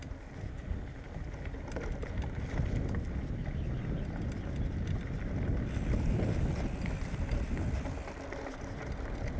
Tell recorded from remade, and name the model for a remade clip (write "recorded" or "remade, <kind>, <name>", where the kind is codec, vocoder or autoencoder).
recorded